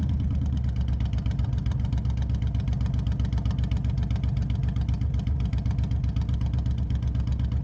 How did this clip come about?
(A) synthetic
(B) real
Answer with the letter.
B